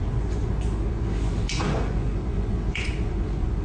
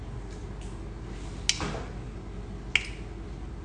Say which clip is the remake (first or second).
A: first